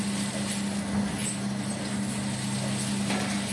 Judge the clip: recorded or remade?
recorded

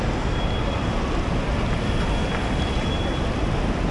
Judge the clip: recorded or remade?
recorded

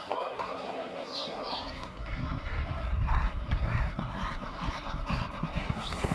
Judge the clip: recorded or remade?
remade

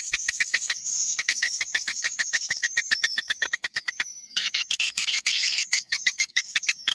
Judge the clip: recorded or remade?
remade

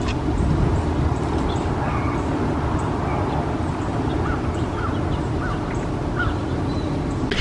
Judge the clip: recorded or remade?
recorded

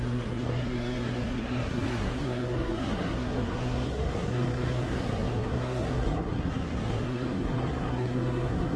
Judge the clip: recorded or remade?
remade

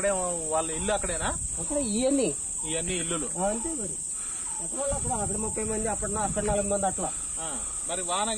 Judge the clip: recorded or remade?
recorded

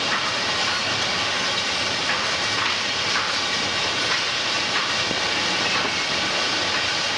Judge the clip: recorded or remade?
recorded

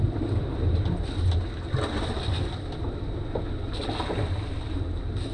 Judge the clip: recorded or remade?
recorded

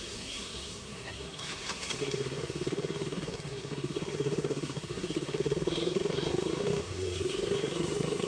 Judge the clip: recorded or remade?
remade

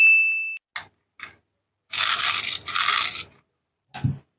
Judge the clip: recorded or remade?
recorded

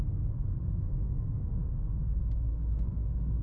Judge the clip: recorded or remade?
remade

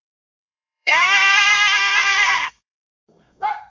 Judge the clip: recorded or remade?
remade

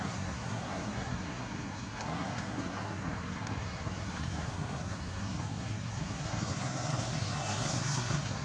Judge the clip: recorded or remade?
remade